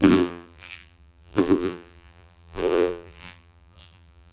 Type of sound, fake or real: fake